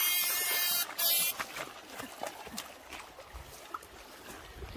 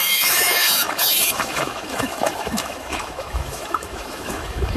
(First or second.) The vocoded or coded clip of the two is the second